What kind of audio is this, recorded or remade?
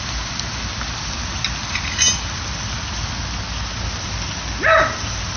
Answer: recorded